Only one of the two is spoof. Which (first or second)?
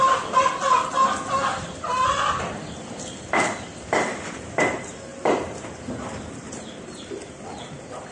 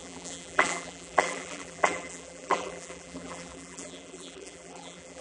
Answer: second